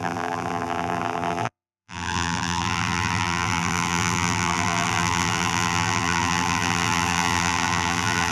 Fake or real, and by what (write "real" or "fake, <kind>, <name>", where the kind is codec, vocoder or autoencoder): fake, vocoder, BigVGAN v2